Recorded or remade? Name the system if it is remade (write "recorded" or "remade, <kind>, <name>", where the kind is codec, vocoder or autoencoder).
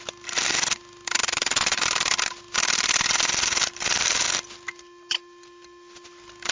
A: recorded